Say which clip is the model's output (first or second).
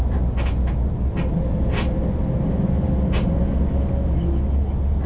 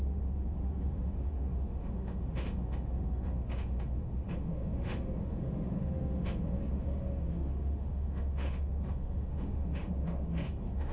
second